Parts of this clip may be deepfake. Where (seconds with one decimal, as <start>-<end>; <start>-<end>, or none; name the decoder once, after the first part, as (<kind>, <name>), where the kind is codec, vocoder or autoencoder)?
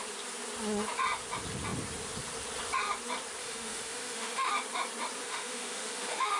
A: 3.4-4.5 (autoencoder, DAC-VAE); 5.2-6.4